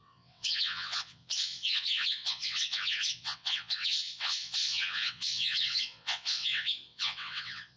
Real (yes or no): no